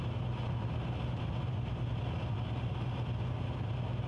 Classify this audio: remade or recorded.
recorded